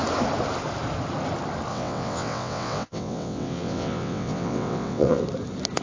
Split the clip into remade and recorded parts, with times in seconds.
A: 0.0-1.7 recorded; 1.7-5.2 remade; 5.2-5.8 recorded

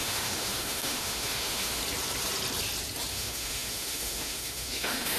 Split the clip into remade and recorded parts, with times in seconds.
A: 0.0-1.8 remade; 1.8-3.1 recorded; 3.1-5.2 remade

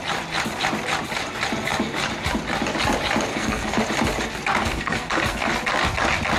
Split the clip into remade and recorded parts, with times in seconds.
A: 0.0-3.3 recorded; 3.3-3.8 remade; 3.8-4.6 recorded; 4.6-5.5 remade; 5.5-6.4 recorded

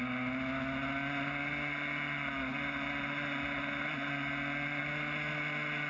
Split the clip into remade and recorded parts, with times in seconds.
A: 0.0-5.9 recorded

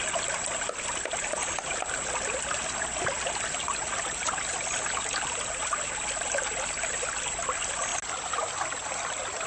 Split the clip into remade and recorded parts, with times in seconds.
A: 0.0-9.5 recorded

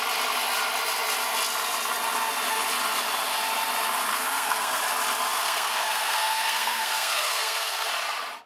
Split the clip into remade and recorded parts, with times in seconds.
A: 0.0-4.1 recorded; 4.1-4.8 remade; 4.8-5.3 recorded; 5.3-7.9 remade; 7.9-8.5 recorded